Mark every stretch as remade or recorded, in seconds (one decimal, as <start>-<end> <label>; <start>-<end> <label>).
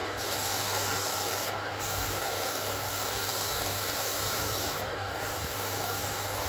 0.0-6.5 remade